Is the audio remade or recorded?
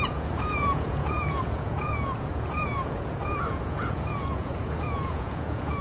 remade